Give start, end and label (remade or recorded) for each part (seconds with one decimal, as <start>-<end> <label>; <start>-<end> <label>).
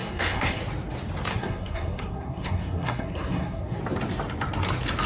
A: 0.0-0.6 remade; 0.6-1.3 recorded; 1.3-3.8 remade; 3.8-5.1 recorded